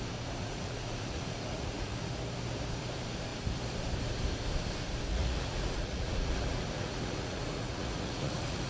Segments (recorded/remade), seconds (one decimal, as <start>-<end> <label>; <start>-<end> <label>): 0.0-0.4 recorded; 0.4-2.1 remade; 2.1-5.1 recorded; 5.1-8.7 remade